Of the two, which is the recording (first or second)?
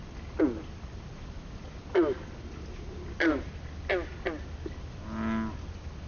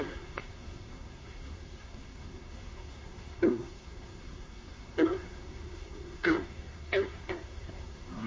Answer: first